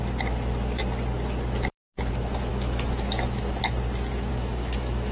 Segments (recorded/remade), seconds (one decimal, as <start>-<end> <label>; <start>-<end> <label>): 0.0-2.5 recorded; 2.5-3.6 remade; 3.6-4.3 recorded; 4.3-5.1 remade